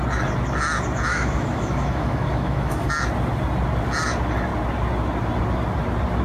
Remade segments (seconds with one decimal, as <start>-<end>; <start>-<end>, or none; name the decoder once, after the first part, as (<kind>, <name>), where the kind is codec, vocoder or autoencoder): 1.1-2.9 (autoencoder, DAC-VAE)

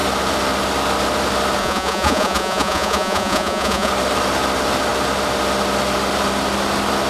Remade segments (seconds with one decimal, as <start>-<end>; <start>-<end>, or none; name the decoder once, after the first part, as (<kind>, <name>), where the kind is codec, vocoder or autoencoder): 1.6-3.9 (vocoder, Vocos)

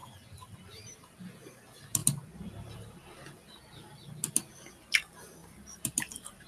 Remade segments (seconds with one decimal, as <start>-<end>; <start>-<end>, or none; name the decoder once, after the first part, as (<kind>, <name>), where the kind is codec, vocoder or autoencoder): 0.0-1.2 (vocoder, BigVGAN v2); 2.0-4.7; 5.4-6.5

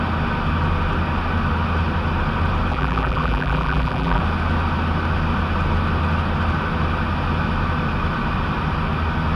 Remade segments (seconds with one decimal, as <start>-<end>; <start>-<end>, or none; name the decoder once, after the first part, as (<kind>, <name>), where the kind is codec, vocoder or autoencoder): 2.7-4.2 (vocoder, BigVGAN v2)